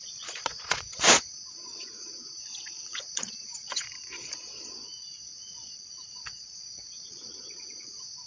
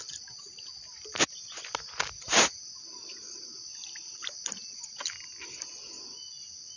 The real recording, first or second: second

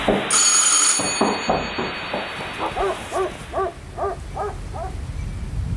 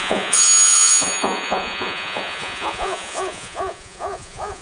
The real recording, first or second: first